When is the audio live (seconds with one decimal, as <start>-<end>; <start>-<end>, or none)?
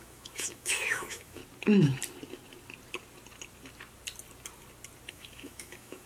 1.4-5.1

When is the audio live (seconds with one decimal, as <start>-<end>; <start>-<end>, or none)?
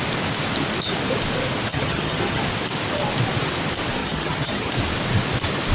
0.0-1.7; 2.4-4.0; 4.7-5.7